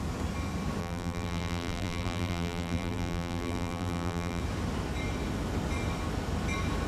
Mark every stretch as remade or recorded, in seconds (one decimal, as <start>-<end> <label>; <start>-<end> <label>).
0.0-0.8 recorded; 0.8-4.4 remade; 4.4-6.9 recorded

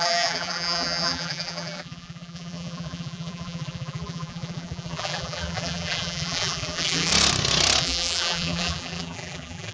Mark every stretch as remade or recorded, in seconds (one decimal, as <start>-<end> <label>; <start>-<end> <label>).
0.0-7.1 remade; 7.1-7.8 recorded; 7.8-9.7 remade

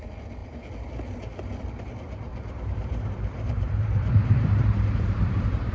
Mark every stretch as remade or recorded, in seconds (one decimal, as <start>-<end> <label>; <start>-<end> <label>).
0.0-2.3 recorded; 2.3-5.7 remade

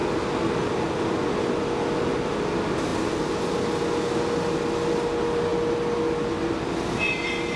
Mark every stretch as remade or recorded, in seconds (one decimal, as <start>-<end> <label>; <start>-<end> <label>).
0.0-7.6 recorded

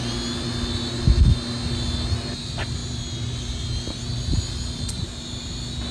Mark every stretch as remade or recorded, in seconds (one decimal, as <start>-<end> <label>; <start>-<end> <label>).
0.0-5.9 recorded

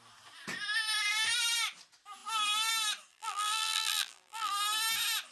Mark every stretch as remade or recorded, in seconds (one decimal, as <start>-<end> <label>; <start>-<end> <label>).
0.0-3.1 recorded; 3.1-4.5 remade; 4.5-5.3 recorded

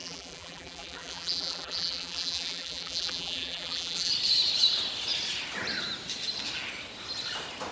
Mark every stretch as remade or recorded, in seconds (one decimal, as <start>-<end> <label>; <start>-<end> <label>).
0.0-4.1 remade; 4.1-7.7 recorded

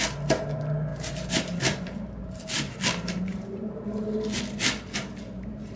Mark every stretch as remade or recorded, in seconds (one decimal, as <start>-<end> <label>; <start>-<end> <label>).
0.0-0.9 recorded; 0.9-4.4 remade; 4.4-5.8 recorded